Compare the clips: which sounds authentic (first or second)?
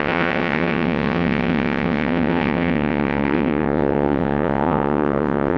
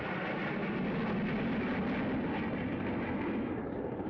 second